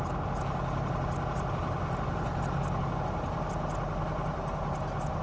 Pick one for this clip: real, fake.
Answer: real